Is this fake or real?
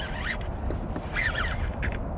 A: real